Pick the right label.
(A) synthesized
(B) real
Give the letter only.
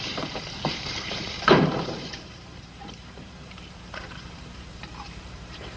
A